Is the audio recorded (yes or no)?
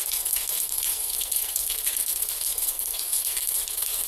no